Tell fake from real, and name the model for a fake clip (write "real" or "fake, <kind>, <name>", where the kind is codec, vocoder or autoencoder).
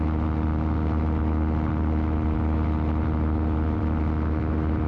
real